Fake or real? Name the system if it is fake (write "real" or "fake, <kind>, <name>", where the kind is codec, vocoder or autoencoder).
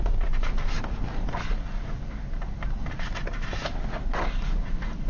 real